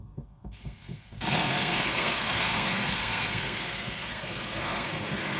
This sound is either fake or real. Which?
fake